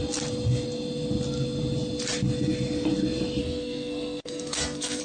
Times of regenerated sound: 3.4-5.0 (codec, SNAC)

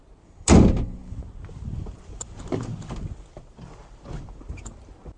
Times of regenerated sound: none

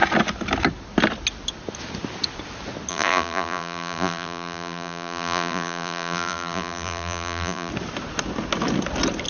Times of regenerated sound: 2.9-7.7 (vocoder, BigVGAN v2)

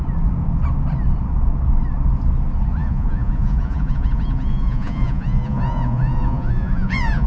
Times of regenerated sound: 2.8-7.3 (vocoder, Vocos)

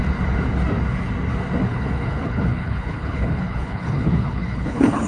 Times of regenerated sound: 1.7-5.1 (codec, HILCodec)